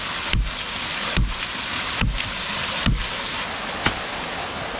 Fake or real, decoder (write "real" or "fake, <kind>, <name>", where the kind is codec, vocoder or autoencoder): real